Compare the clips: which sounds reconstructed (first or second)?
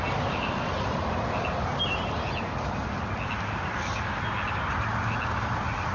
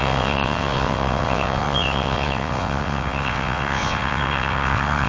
second